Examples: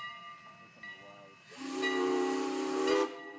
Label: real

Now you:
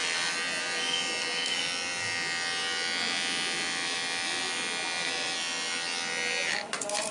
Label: real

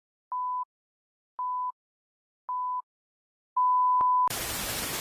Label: real